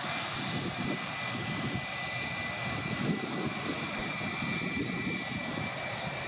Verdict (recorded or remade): recorded